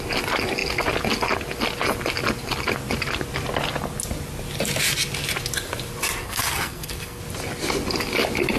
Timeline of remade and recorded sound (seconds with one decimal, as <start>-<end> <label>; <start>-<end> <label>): 0.0-6.2 recorded; 6.2-7.2 remade; 7.2-8.6 recorded